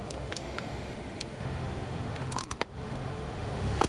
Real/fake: fake